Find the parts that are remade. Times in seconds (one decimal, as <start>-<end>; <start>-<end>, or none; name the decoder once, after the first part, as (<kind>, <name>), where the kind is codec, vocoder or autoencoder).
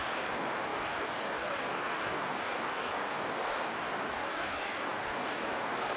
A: 0.0-6.0 (codec, DAC)